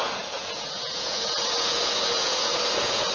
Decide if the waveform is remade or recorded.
remade